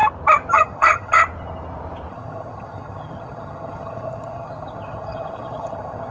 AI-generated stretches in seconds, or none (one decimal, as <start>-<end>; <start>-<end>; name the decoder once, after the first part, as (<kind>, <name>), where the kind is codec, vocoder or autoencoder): 0.5-1.2 (vocoder, HiFi-GAN); 2.1-6.1